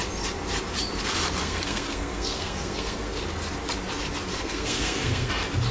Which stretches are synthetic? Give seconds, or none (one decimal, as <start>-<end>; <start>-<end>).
1.4-3.2; 4.3-5.3